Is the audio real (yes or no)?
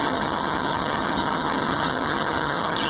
no